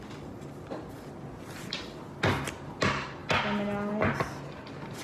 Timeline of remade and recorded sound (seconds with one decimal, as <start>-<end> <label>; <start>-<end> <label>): 0.0-5.0 recorded